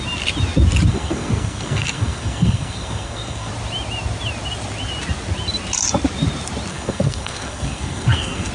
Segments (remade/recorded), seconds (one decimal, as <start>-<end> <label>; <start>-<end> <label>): 0.0-0.9 recorded; 0.9-3.5 remade; 3.5-6.7 recorded; 6.7-8.5 remade